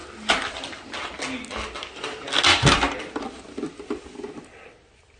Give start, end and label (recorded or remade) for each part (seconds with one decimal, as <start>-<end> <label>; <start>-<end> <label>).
0.0-5.2 recorded